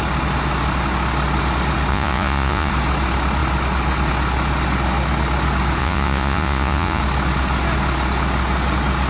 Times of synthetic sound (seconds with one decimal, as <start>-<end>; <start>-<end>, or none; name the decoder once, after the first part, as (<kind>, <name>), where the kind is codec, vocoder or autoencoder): 1.9-2.7 (vocoder, Vocos); 5.8-7.0